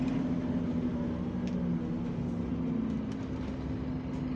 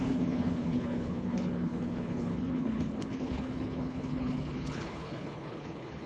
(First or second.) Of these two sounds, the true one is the first